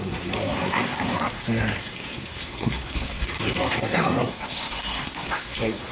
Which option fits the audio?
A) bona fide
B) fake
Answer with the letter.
B